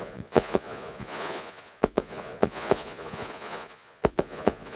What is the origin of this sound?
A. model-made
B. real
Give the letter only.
A